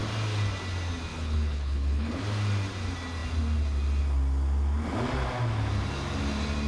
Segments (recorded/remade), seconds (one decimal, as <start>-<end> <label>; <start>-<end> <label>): 0.0-1.1 recorded; 1.1-2.2 remade; 2.2-6.7 recorded